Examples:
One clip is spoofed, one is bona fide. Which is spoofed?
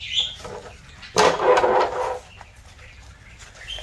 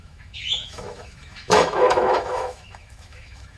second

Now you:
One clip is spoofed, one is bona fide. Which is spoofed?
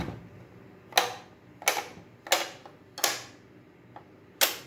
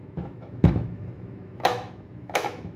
second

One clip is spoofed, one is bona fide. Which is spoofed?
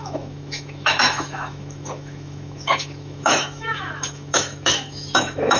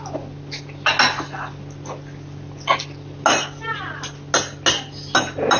first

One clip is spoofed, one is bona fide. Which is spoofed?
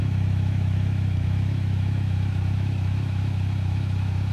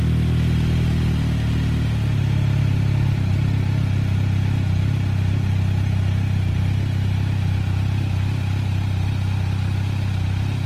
first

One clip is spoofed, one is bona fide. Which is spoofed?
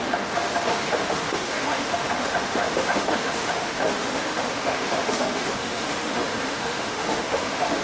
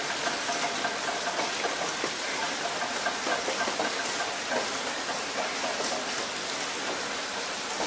first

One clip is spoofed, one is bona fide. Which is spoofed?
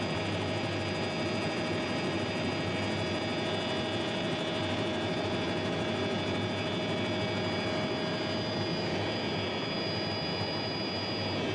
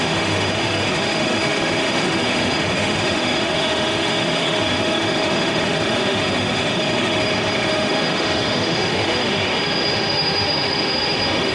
second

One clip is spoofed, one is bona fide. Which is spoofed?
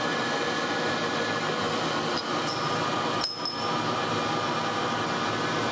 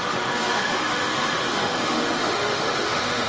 second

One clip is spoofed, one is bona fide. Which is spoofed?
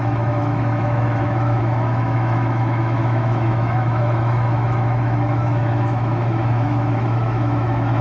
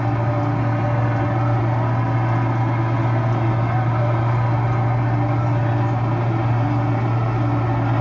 first